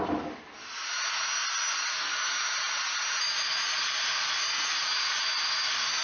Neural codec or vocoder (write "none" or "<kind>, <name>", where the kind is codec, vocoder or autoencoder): none